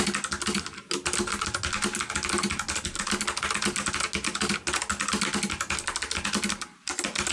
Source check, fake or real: real